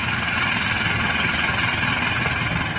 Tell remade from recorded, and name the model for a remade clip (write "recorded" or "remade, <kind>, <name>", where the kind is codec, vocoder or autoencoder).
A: recorded